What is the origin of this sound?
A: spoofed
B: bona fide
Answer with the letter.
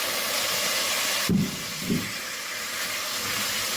A